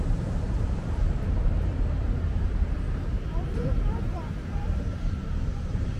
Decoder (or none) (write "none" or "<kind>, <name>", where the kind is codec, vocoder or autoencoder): vocoder, BigVGAN v2